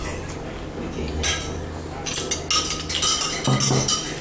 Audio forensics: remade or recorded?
recorded